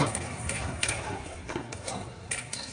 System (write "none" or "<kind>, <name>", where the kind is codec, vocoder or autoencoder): codec, SNAC